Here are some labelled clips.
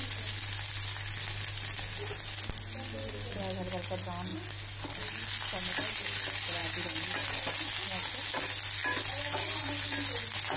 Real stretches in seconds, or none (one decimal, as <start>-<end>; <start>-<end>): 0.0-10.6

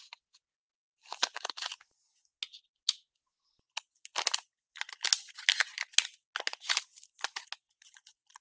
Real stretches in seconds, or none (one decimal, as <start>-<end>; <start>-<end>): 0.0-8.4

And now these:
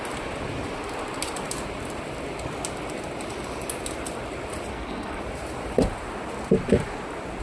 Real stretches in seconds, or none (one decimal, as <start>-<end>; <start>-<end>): 0.0-4.7; 5.2-7.4

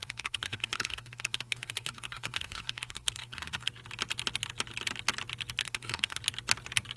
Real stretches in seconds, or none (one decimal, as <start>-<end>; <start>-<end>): 3.7-5.6; 6.2-7.0

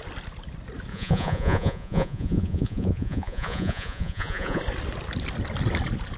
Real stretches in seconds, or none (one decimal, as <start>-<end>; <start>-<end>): 0.0-0.9; 4.6-6.2

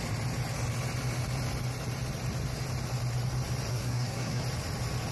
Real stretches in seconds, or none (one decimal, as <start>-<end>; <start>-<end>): 0.0-3.7; 4.4-5.1